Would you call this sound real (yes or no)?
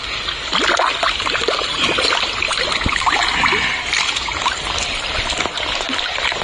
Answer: yes